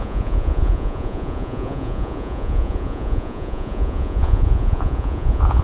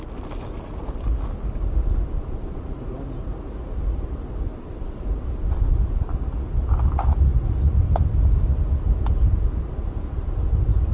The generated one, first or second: first